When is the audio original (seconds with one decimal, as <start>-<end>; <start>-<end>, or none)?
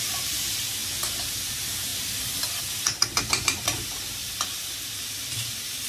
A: 0.8-1.5; 1.9-2.6; 4.2-5.3